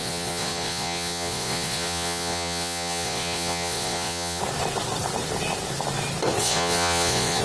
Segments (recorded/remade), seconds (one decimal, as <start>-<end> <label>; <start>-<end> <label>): 0.0-4.4 remade; 4.4-6.4 recorded; 6.4-7.4 remade

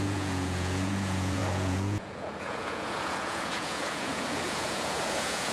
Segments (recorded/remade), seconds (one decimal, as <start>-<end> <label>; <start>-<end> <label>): 0.0-5.5 remade